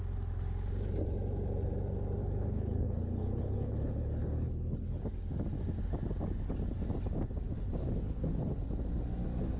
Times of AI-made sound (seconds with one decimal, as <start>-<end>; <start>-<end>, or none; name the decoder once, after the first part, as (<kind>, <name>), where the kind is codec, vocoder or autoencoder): 2.2-5.1 (codec, HILCodec); 7.8-8.5